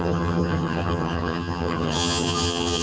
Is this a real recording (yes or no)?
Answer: no